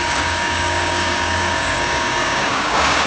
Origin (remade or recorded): remade